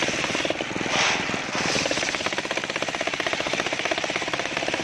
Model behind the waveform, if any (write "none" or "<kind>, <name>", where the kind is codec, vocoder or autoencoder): none